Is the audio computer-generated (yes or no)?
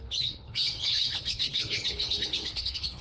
yes